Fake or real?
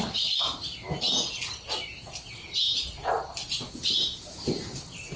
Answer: real